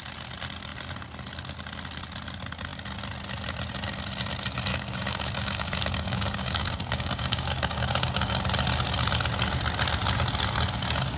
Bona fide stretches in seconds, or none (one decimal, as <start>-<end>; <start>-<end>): 0.0-4.7; 8.4-11.2